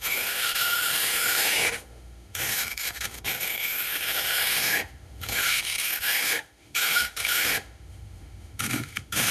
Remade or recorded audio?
remade